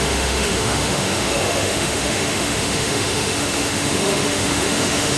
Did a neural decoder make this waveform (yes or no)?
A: yes